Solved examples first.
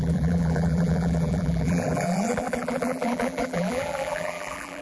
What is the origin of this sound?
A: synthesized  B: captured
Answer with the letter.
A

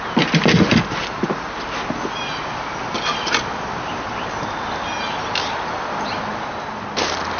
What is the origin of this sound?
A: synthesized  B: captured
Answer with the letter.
B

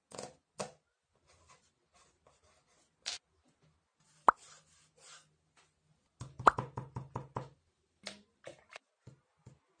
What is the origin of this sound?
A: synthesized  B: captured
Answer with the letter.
B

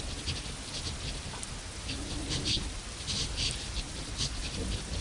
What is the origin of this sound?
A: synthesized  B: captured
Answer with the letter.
B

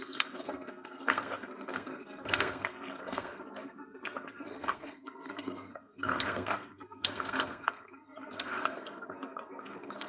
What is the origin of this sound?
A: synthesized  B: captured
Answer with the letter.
A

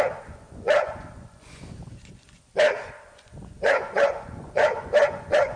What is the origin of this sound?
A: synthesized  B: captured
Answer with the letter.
A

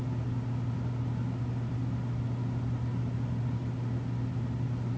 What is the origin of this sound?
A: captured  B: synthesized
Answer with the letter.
A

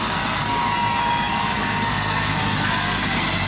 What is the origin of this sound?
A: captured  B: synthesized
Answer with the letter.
B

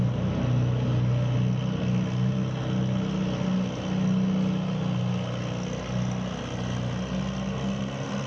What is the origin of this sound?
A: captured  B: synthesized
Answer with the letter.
A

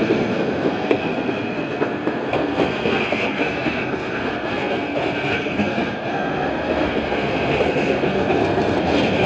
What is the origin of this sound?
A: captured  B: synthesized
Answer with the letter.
B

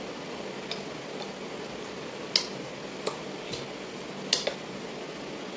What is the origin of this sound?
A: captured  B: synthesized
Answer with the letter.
A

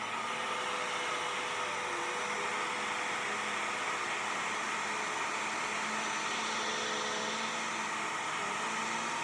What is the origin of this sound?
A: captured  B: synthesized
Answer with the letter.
A